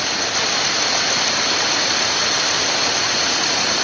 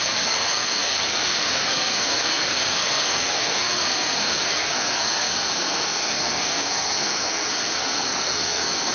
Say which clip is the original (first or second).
first